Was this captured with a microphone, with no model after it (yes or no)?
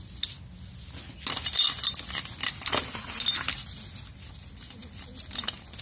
yes